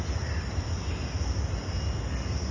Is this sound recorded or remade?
recorded